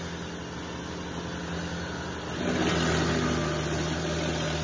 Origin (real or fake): real